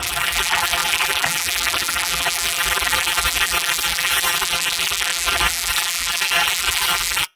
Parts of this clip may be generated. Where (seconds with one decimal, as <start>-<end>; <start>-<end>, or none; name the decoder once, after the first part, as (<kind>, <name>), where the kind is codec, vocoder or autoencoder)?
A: 0.0-7.4 (vocoder, BigVGAN v2)